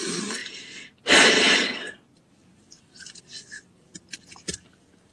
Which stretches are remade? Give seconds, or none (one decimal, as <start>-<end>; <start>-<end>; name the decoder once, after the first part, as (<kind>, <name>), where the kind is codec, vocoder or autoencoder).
none

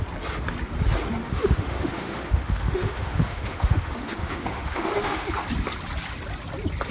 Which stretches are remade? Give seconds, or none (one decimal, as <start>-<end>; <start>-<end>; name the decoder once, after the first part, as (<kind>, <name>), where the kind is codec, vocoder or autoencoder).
1.2-5.3 (autoencoder, DAC-VAE)

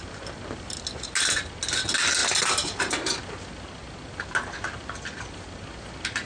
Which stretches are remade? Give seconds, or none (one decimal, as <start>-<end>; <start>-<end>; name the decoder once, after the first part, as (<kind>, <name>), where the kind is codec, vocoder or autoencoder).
none

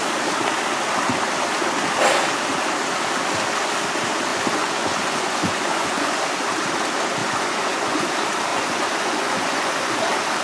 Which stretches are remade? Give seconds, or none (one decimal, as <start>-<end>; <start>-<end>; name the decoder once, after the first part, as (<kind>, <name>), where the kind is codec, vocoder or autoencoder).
4.3-6.2 (vocoder, Vocos); 7.2-8.1; 8.5-10.0

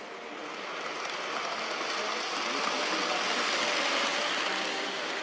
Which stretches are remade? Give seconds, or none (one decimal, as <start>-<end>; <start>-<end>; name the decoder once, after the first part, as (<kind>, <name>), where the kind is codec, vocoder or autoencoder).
4.7-5.2 (autoencoder, DAC-VAE)